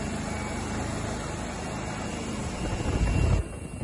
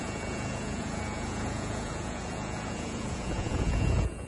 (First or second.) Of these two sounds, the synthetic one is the second